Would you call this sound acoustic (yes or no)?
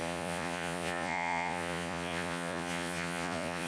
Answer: no